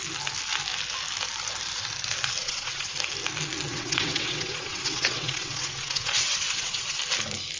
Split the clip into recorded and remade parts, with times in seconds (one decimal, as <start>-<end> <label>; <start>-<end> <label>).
0.0-2.4 recorded; 2.4-2.9 remade; 2.9-3.7 recorded; 3.7-7.0 remade; 7.0-7.6 recorded